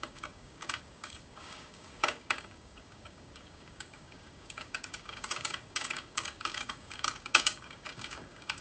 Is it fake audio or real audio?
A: fake